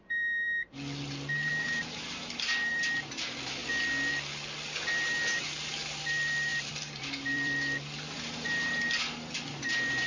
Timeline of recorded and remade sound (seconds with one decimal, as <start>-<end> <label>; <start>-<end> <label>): 0.0-3.6 remade; 3.6-4.1 recorded; 4.1-10.1 remade